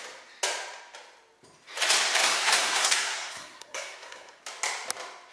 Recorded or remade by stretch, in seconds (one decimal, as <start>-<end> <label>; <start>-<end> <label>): 0.0-2.2 recorded; 2.2-4.4 remade; 4.4-5.3 recorded